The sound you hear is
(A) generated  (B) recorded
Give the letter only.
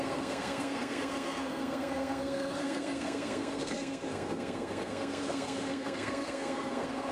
A